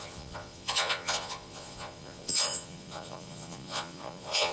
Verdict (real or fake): fake